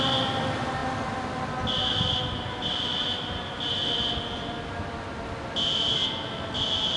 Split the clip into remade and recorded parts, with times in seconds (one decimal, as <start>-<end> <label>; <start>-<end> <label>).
0.0-7.0 recorded